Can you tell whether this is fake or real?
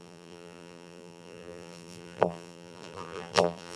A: fake